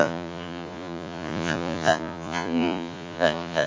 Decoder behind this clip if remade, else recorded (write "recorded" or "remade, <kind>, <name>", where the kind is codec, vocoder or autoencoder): remade, vocoder, Vocos